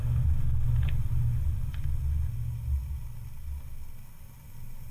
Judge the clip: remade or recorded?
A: recorded